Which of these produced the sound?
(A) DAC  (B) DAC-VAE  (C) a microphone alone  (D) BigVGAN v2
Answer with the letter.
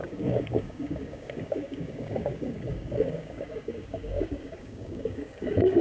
A